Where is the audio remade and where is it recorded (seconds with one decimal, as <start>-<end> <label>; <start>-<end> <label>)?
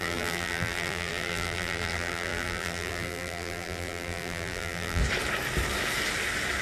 0.0-5.0 remade; 5.0-6.6 recorded